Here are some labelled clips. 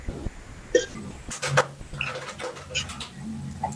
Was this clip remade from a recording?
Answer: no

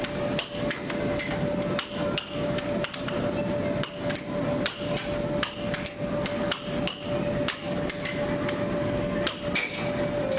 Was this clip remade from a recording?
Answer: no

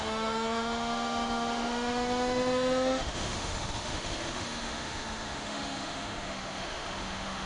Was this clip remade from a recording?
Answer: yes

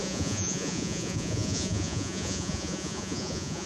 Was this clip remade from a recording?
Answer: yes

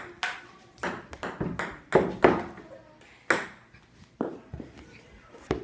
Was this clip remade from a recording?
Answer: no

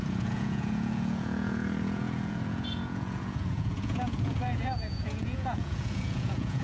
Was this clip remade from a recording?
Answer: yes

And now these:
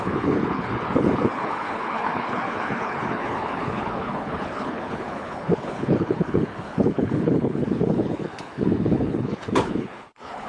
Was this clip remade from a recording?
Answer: yes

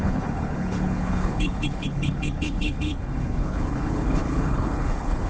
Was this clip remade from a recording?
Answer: yes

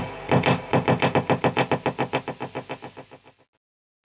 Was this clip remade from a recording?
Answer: no